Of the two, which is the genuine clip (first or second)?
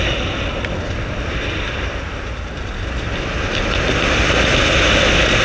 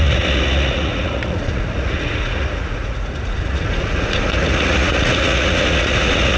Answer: first